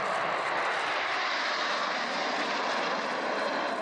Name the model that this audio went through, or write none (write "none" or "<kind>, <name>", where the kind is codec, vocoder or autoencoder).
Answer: none